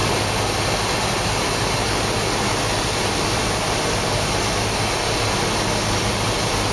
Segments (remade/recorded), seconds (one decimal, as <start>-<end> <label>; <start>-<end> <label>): 0.0-6.7 recorded